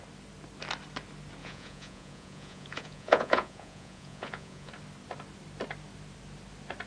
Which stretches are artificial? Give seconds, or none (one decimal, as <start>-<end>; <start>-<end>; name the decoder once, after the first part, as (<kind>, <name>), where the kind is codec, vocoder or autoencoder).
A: 1.4-4.7 (vocoder, Vocos)